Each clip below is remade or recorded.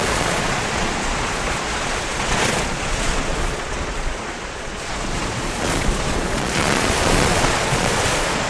remade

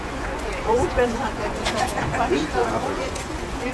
remade